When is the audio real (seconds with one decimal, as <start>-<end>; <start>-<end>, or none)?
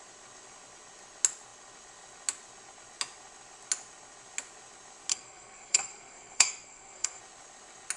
0.0-5.1; 7.2-8.0